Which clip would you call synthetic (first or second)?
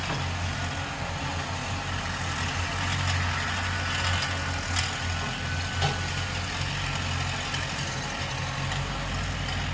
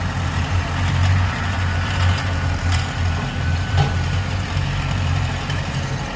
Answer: second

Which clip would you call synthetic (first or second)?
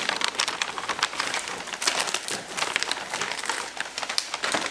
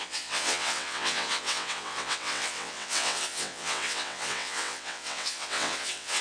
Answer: second